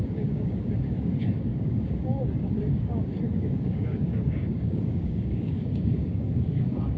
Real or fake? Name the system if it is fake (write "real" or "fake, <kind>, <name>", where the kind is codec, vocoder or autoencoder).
fake, codec, DAC